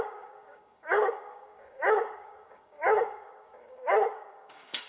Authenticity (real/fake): fake